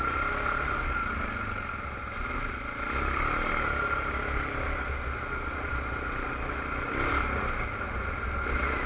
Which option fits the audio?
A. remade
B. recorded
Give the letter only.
B